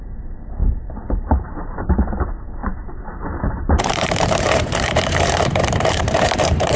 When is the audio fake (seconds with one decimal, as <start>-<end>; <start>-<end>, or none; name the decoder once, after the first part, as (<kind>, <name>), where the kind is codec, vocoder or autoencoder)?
0.0-0.6 (vocoder, BigVGAN v2); 1.2-6.8